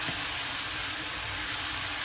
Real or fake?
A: fake